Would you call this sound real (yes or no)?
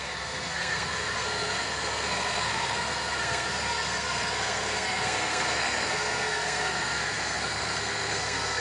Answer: no